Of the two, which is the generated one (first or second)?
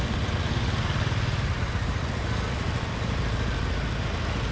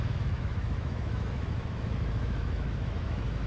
second